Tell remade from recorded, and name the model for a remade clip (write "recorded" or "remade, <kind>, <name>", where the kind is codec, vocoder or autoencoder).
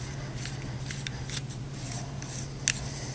recorded